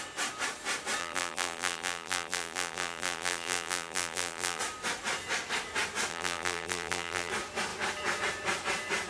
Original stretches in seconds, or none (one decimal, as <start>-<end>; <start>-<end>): 0.0-1.0; 4.6-6.1; 7.3-9.1